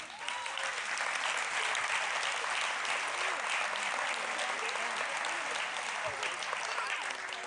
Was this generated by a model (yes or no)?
no